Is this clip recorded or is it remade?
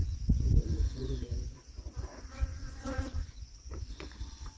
remade